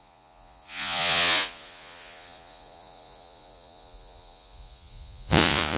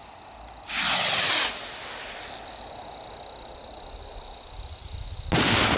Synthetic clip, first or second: first